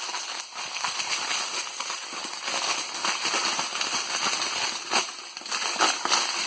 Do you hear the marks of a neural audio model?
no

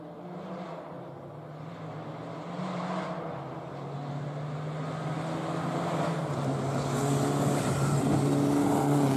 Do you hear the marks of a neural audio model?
no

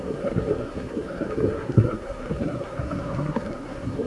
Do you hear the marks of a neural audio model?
yes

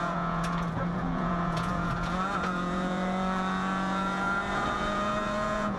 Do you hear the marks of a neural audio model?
yes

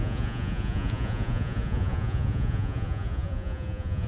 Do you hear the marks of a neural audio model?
yes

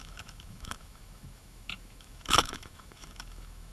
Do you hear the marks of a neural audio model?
yes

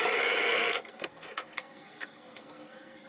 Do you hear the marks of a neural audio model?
yes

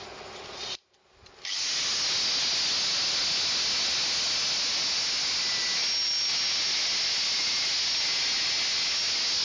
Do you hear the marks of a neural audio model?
no